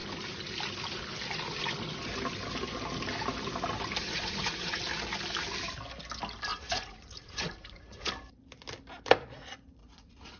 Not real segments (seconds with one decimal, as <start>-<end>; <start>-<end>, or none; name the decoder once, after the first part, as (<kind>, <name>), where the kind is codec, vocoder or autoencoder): 4.0-4.8 (vocoder, Vocos); 6.5-8.1; 9.8-10.4